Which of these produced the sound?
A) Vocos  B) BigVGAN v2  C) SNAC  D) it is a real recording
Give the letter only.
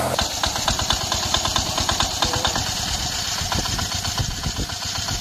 B